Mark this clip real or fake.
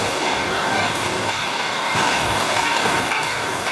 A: fake